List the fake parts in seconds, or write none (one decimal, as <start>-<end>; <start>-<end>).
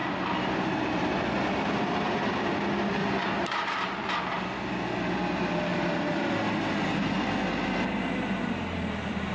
0.0-0.6; 3.0-4.2; 5.7-6.3